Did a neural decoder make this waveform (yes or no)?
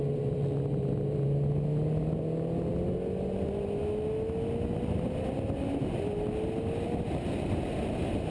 no